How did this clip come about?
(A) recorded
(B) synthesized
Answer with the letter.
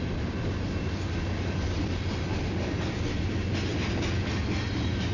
A